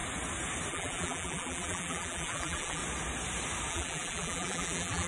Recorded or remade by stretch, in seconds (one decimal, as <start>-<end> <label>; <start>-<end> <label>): 0.0-0.7 recorded; 0.7-2.8 remade; 2.8-3.7 recorded; 3.7-5.1 remade